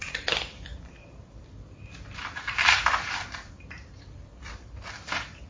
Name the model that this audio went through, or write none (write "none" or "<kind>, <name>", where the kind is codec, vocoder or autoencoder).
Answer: vocoder, BigVGAN v2